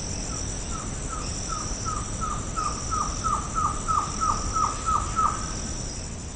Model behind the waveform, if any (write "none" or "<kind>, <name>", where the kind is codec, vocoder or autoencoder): none